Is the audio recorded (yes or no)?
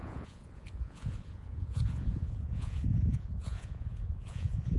no